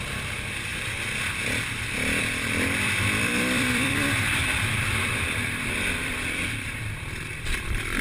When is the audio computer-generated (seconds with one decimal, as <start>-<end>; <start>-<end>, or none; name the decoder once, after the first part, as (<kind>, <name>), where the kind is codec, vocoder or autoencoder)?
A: 0.0-0.7 (vocoder, BigVGAN v2); 2.2-8.0